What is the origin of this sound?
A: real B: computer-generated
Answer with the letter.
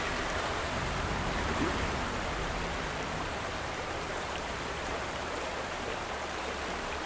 B